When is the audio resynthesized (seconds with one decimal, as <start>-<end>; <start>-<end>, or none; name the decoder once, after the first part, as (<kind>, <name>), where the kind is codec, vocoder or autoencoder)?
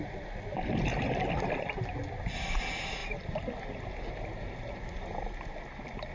none